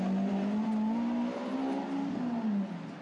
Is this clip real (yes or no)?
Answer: yes